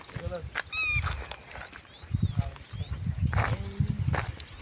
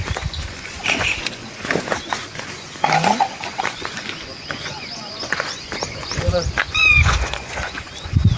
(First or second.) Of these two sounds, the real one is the first